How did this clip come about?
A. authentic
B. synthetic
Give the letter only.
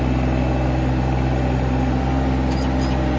A